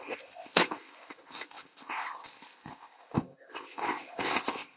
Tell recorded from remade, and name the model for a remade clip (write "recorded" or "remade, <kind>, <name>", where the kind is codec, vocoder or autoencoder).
remade, codec, ZipCodec